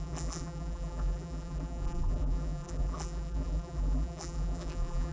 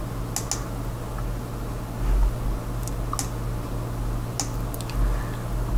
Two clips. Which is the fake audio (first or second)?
first